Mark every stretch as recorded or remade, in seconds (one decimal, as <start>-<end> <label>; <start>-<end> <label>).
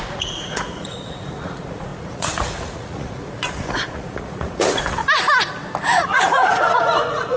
0.0-5.0 remade; 5.0-5.8 recorded; 5.8-7.4 remade